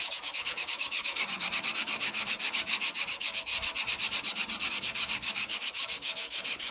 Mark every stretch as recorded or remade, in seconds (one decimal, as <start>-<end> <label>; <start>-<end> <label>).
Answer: 0.0-3.5 remade; 3.5-4.7 recorded; 4.7-6.7 remade